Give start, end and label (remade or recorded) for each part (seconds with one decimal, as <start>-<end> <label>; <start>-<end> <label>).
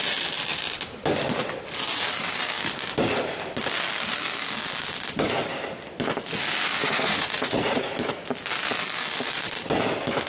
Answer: 0.0-6.8 recorded; 6.8-7.9 remade; 7.9-10.3 recorded